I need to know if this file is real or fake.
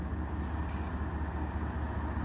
real